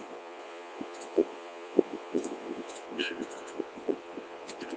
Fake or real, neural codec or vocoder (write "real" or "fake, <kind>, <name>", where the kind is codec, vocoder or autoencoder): fake, vocoder, Vocos